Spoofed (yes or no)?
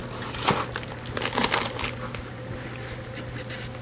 no